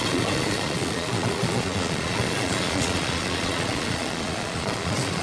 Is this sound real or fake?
fake